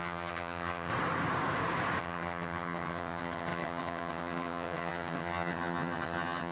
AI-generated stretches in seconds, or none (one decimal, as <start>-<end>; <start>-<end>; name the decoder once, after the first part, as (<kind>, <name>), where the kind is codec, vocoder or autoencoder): 0.0-0.9 (vocoder, HiFi-GAN); 2.0-6.5